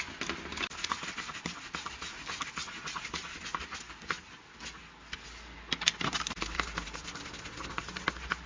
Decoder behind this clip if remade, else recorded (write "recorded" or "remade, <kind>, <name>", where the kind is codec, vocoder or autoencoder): recorded